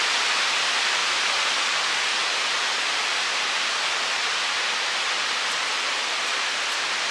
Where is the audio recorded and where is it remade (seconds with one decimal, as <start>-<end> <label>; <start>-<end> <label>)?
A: 0.0-7.1 recorded